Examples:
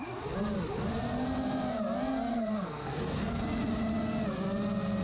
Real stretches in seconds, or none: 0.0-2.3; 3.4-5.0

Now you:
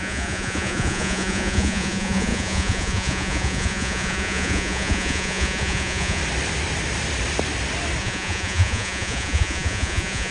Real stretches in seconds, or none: 6.2-8.0

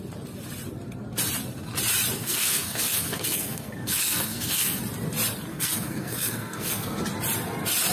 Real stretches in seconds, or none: 0.0-2.2; 4.8-5.5; 7.0-7.9